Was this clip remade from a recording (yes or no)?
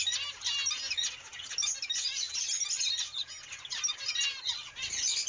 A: no